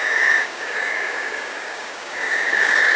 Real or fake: fake